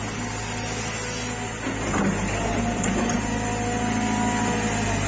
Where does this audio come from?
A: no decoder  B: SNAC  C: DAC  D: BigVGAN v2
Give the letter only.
A